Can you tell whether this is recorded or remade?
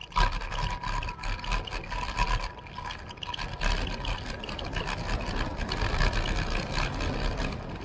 recorded